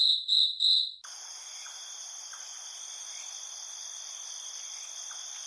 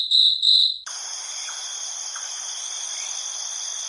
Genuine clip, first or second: first